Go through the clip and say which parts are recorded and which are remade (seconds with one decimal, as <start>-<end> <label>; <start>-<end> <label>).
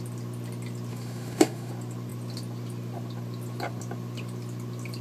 0.0-0.9 recorded; 0.9-1.7 remade; 1.7-5.0 recorded